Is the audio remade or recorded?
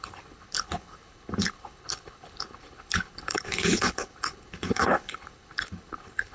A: remade